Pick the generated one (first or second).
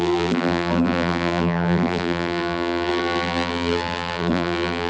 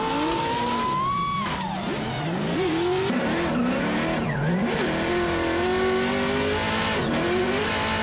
first